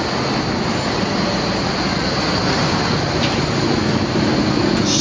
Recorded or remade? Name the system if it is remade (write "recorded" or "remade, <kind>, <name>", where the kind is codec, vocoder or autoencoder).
recorded